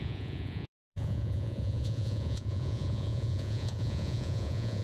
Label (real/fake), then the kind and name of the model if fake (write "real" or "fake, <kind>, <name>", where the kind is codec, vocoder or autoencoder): fake, vocoder, Vocos